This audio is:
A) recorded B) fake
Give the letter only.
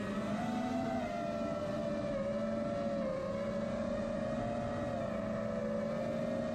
A